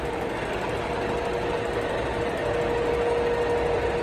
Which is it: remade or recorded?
recorded